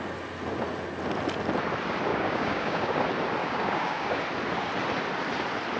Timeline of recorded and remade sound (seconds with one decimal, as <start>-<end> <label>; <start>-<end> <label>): 0.0-2.1 recorded; 2.1-3.0 remade; 3.0-3.4 recorded; 3.4-4.2 remade; 4.2-5.8 recorded